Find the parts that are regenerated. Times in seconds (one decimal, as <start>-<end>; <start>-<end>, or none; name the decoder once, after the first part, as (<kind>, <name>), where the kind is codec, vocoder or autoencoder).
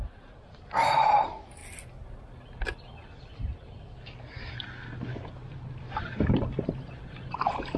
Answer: 0.0-1.6 (vocoder, BigVGAN v2); 6.0-7.8